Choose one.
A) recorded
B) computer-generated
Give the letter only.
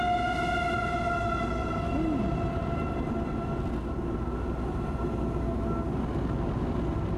A